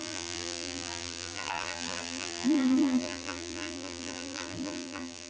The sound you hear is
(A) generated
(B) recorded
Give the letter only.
A